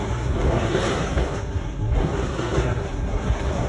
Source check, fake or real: fake